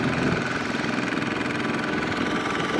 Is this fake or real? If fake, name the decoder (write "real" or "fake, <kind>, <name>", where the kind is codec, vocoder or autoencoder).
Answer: real